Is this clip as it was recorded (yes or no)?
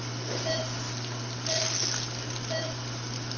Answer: yes